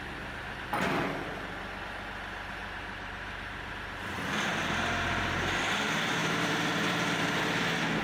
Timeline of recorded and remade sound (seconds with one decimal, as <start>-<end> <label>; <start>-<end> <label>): 0.0-2.6 recorded; 2.6-3.7 remade; 3.7-4.5 recorded; 4.5-5.6 remade; 5.6-6.2 recorded; 6.2-7.4 remade; 7.4-8.0 recorded